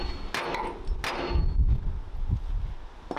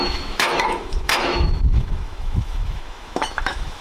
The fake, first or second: second